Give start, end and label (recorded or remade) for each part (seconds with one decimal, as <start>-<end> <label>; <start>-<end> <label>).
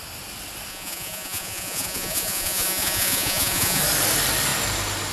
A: 0.0-0.7 recorded; 0.7-3.8 remade; 3.8-5.1 recorded